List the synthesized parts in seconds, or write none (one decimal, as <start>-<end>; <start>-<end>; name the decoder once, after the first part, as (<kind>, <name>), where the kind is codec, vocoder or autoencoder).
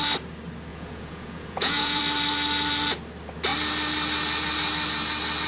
0.7-2.0 (vocoder, Vocos)